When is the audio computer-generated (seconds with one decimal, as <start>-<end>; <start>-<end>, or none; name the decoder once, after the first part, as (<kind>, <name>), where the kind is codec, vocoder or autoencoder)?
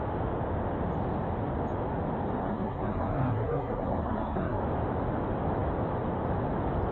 2.4-4.6 (codec, SNAC)